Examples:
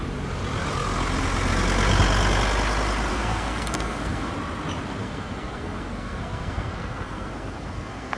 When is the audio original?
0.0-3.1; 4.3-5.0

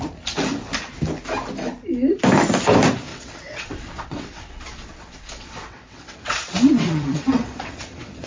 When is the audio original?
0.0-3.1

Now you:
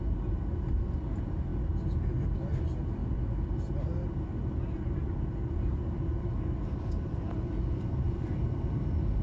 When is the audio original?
0.0-9.2

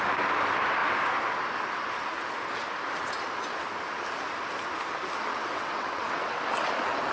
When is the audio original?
0.0-5.3; 6.4-7.1

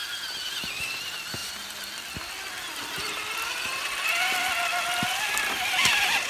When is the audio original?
0.0-6.3

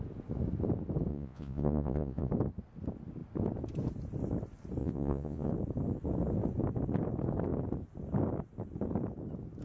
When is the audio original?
0.0-1.1; 2.3-4.8; 5.5-9.6

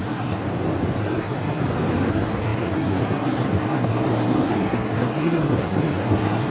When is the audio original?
0.4-1.0; 1.6-2.1

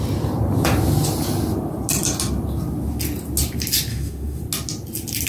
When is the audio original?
0.0-3.9; 4.4-5.3